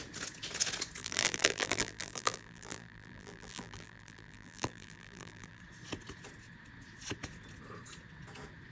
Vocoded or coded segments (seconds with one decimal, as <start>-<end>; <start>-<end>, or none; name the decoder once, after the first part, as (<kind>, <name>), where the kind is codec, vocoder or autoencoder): 1.0-5.6 (vocoder, BigVGAN v2)